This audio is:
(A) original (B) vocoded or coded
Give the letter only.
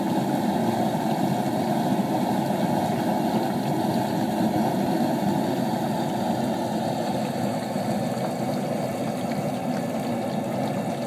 A